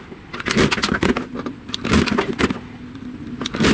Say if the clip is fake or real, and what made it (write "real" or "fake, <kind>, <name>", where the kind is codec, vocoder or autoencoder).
real